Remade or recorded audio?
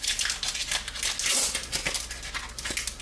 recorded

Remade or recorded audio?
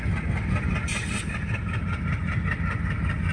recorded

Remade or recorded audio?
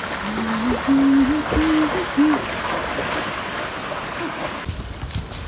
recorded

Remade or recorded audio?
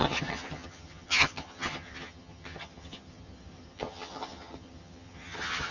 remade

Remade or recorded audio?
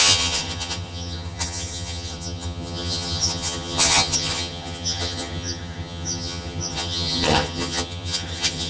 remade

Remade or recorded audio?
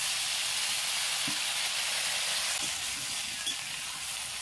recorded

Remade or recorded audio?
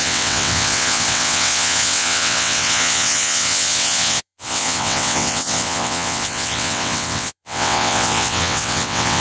remade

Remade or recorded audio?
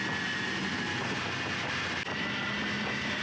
recorded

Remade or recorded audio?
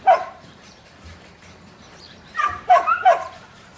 remade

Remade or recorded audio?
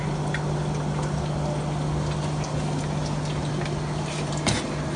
recorded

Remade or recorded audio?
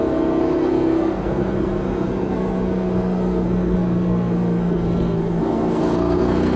remade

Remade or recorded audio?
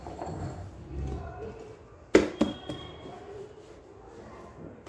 recorded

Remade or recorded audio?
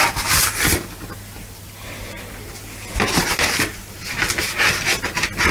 recorded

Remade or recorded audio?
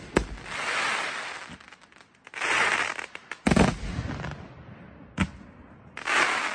recorded